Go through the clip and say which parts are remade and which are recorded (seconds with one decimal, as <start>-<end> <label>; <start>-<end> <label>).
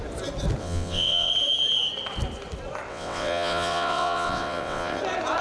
0.0-0.6 recorded; 0.6-1.3 remade; 1.3-2.9 recorded; 2.9-5.0 remade; 5.0-5.4 recorded